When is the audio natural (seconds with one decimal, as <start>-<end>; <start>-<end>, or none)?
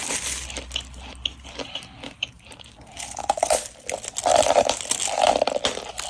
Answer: 0.0-4.3; 4.8-6.1